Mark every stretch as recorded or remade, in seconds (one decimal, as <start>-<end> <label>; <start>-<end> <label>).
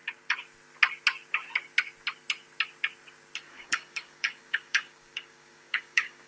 0.0-3.4 recorded; 3.4-6.3 remade